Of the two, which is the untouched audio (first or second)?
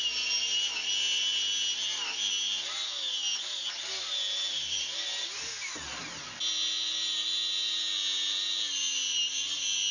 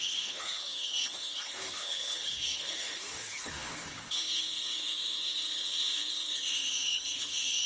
first